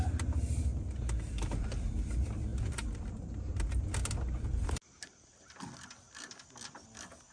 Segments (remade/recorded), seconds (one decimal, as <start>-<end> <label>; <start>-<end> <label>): 0.0-7.3 recorded